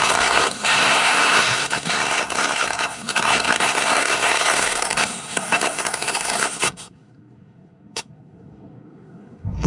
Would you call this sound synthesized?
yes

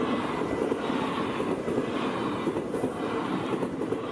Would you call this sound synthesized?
no